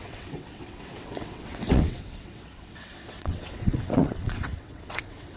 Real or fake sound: fake